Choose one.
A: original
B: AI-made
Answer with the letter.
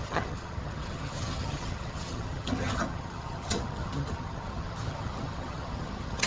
B